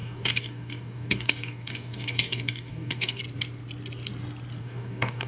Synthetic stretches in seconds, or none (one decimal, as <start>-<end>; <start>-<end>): 0.0-3.2; 4.6-5.3